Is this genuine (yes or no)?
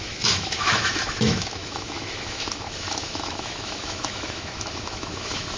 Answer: no